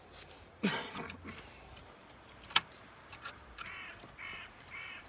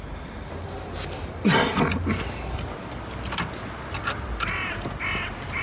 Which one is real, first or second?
second